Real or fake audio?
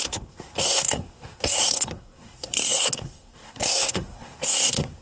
fake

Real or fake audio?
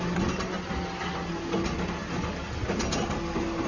real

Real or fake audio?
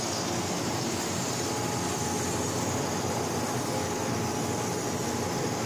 real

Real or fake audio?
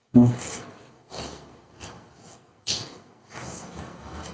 fake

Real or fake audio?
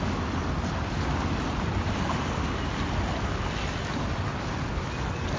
real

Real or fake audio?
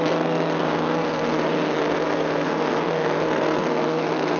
fake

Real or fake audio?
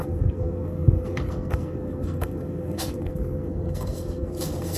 fake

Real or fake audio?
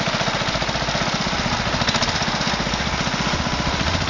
real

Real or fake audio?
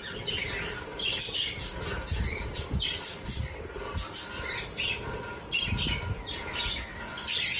real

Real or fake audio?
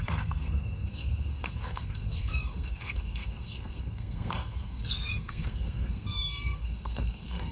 fake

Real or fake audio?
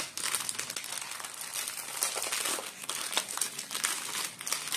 real